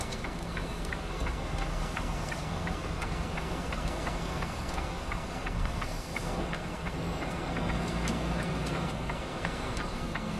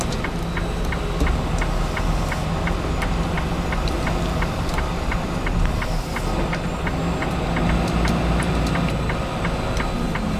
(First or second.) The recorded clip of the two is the second